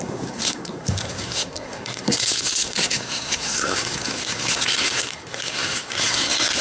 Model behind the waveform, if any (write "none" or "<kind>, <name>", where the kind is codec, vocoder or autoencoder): codec, SNAC